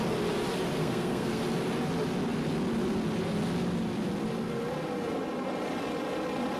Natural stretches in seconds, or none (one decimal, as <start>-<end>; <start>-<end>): 0.0-0.8; 1.4-6.6